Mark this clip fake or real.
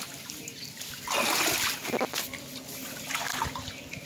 real